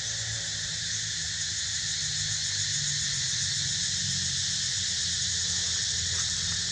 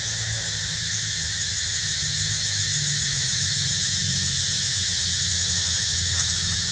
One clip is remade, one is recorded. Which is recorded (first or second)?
first